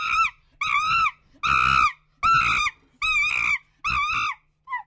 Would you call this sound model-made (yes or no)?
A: no